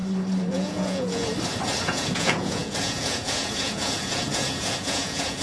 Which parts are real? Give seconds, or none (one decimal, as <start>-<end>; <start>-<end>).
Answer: 0.0-0.5; 1.2-1.8

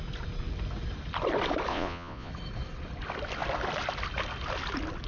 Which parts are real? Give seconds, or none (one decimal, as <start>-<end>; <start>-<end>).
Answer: 0.0-1.7; 2.3-5.1

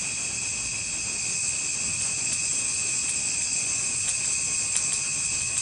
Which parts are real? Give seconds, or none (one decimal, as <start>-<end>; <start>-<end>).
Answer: 0.0-1.9; 3.1-3.5; 4.2-5.6